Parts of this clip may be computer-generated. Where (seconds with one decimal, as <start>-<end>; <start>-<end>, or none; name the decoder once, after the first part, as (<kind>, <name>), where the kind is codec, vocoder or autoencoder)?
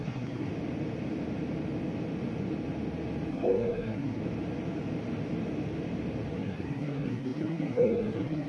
0.0-0.5 (codec, SNAC); 3.3-4.2; 6.3-8.5